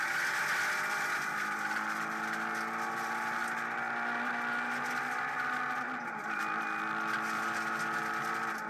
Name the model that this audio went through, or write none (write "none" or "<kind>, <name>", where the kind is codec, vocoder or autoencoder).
none